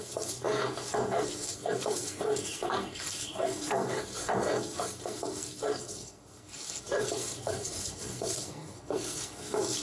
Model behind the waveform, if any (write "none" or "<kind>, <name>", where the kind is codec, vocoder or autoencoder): codec, SNAC